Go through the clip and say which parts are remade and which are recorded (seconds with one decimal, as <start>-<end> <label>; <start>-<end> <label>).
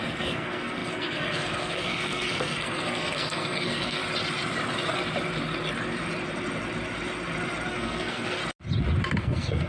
0.0-4.0 remade; 4.0-7.7 recorded; 7.7-8.4 remade; 8.4-9.2 recorded; 9.2-9.7 remade